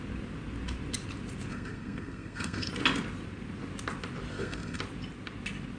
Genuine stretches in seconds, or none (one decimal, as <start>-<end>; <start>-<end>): 0.0-1.5; 2.7-4.3; 4.8-5.8